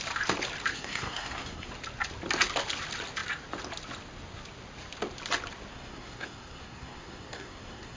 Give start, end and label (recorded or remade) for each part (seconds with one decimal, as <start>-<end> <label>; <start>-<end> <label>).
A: 0.0-0.7 recorded; 0.7-1.7 remade; 1.7-5.7 recorded; 5.7-8.0 remade